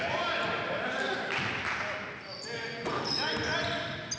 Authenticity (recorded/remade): recorded